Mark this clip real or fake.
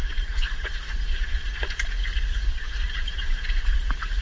fake